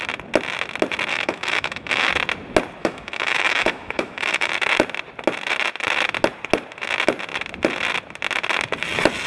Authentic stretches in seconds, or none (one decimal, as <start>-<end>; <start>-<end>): 0.0-1.1; 2.1-2.8; 4.5-9.3